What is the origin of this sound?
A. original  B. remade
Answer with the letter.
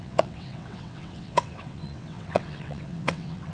B